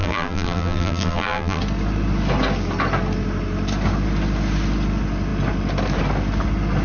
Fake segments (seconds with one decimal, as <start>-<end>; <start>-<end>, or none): 0.0-1.6